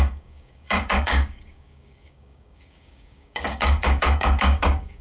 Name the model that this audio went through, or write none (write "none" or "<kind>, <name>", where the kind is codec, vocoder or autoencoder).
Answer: codec, DAC